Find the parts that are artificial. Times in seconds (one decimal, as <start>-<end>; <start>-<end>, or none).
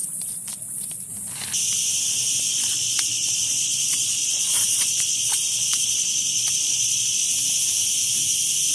0.0-1.1; 2.5-7.3